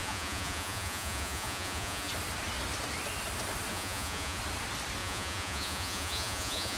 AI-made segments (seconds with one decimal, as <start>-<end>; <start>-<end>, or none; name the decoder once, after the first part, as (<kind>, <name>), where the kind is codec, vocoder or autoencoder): 0.0-2.1 (vocoder, Vocos); 3.7-4.4; 5.0-6.8